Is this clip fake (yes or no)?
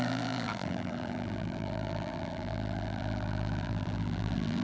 yes